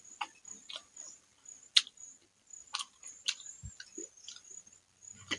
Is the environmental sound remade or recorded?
recorded